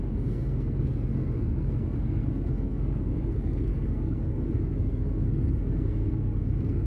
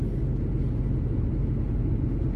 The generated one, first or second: first